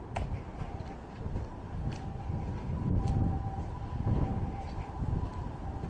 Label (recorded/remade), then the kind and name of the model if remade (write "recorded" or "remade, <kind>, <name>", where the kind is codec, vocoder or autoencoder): recorded